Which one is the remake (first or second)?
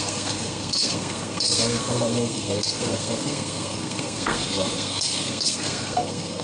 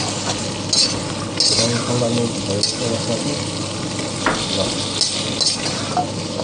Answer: first